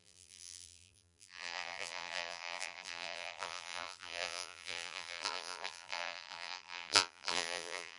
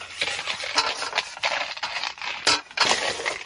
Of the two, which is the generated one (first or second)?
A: first